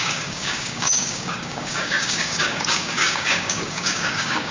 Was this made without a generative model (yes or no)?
no